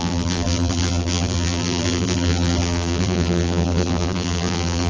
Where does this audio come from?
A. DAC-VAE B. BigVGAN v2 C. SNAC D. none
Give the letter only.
B